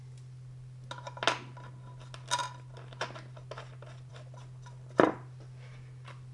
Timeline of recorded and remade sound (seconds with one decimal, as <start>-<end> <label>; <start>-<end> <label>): 0.0-6.3 recorded